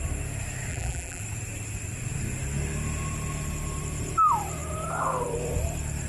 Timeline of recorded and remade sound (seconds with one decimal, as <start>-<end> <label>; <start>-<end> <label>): 0.0-0.7 recorded; 0.7-1.2 remade; 1.2-6.1 recorded